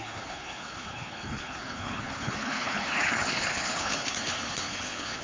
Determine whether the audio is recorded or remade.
remade